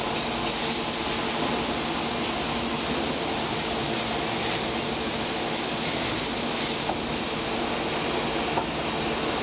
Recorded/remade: recorded